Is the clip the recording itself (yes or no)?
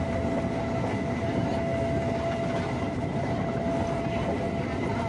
yes